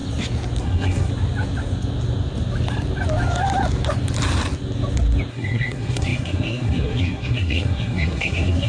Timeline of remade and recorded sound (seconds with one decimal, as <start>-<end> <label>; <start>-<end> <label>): 0.0-0.6 recorded; 0.6-1.1 remade; 1.1-5.3 recorded; 5.3-8.7 remade